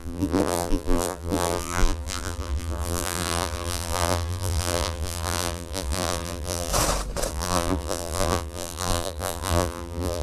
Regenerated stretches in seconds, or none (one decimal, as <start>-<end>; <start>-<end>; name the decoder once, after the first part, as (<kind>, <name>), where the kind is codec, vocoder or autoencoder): 0.0-6.7 (vocoder, BigVGAN v2); 7.3-10.2